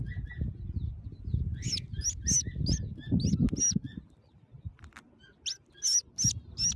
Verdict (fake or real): real